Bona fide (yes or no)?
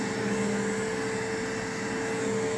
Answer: yes